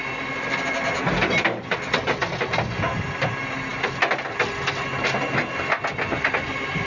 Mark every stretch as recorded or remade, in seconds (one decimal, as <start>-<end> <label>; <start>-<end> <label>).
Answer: 0.0-6.9 recorded